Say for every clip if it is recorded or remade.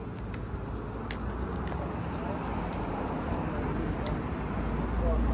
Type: recorded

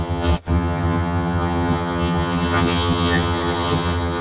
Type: remade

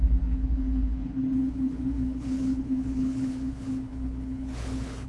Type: remade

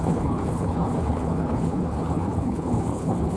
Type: remade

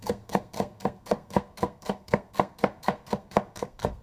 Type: remade